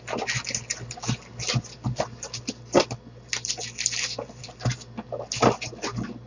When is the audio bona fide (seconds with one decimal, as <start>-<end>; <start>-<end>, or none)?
0.0-6.3